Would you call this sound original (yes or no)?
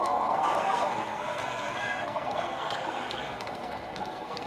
no